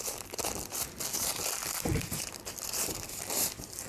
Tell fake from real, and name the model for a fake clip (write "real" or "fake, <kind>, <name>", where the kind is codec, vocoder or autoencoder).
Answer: real